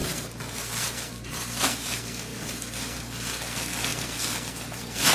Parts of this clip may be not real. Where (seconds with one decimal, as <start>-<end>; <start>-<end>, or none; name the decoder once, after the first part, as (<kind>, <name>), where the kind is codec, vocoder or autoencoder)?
0.0-5.1 (codec, SNAC)